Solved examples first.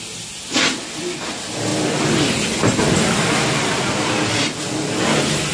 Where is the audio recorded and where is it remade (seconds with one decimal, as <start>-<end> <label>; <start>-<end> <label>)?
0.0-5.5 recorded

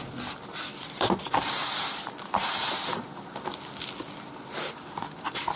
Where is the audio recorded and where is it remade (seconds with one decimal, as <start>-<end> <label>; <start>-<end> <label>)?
0.0-0.5 recorded; 0.5-3.5 remade; 3.5-5.6 recorded

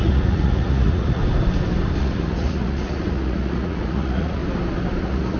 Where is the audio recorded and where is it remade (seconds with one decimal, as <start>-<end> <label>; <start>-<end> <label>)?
0.0-1.2 remade; 1.2-2.0 recorded; 2.0-4.4 remade; 4.4-5.0 recorded; 5.0-5.4 remade